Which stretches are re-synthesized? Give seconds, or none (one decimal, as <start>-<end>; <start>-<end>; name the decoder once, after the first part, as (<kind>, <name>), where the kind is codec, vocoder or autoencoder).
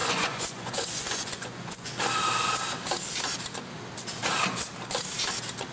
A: 0.0-1.9 (vocoder, Vocos)